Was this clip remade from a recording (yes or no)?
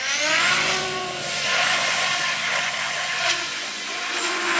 yes